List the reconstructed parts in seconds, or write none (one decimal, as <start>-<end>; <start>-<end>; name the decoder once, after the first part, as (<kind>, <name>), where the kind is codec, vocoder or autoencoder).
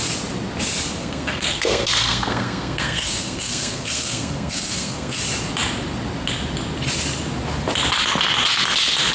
1.0-5.2 (codec, SNAC)